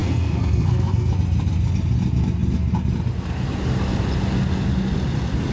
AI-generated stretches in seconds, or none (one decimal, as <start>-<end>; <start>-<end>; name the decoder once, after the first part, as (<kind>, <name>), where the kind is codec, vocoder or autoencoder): 0.0-1.1 (codec, SNAC)